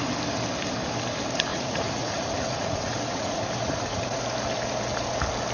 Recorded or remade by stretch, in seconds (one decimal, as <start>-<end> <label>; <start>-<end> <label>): 0.0-1.5 recorded; 1.5-4.2 remade; 4.2-5.5 recorded